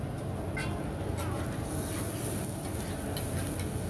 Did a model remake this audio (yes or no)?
no